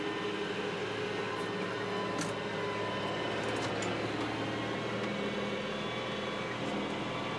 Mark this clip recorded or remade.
recorded